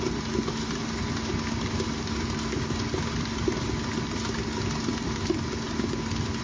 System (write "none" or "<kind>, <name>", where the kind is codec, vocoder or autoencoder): none